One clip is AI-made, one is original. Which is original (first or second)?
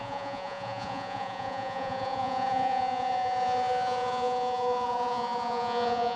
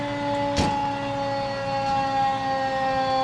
second